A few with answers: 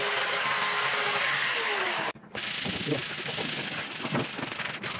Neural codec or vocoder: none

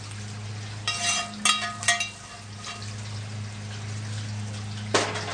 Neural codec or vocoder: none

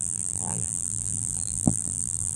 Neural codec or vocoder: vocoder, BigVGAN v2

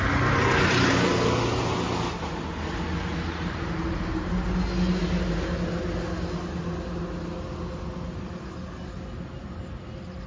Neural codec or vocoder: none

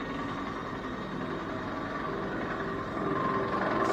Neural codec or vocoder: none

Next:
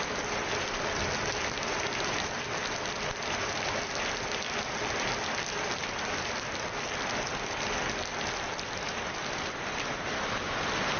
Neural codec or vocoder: none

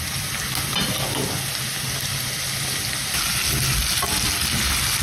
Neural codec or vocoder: none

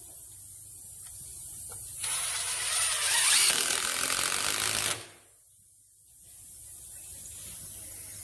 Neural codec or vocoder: none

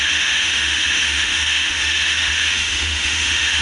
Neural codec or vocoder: autoencoder, DAC-VAE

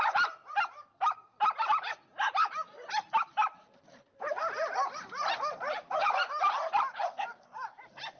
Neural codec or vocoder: none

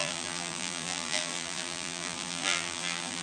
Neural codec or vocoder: vocoder, BigVGAN v2